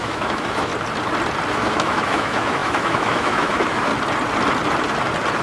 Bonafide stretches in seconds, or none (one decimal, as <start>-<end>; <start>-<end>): 0.7-1.5; 3.9-5.4